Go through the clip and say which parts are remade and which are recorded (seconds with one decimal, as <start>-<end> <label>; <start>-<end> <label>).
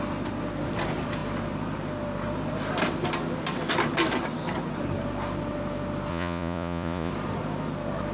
0.0-6.1 recorded; 6.1-7.1 remade; 7.1-8.1 recorded